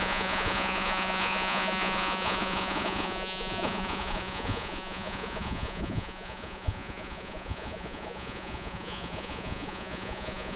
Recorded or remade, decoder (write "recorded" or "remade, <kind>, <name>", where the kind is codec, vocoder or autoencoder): remade, vocoder, Vocos